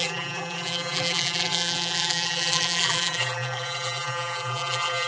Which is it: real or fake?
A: fake